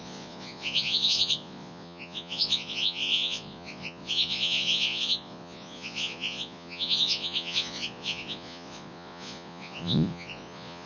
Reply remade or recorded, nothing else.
remade